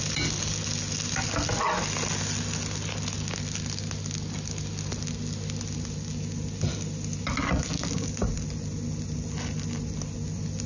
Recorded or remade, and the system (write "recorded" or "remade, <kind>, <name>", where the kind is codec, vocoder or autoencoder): recorded